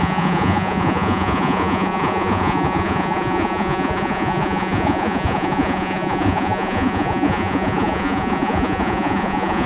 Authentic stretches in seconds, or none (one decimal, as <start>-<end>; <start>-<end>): none